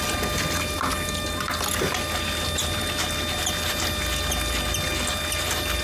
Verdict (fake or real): real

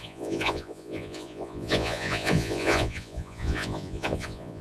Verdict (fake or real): fake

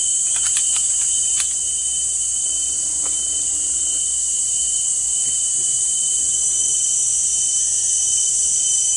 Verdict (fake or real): real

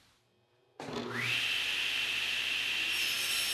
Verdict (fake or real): real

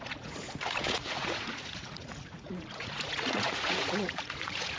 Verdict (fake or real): fake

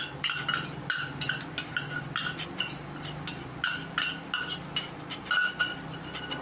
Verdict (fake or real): real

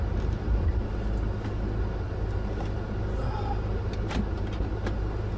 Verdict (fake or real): real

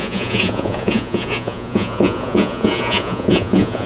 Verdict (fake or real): fake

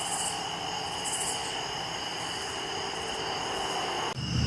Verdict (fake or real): real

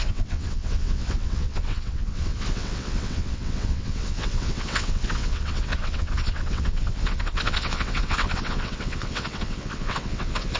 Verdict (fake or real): fake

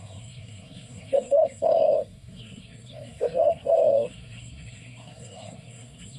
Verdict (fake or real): fake